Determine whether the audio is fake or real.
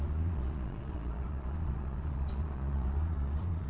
fake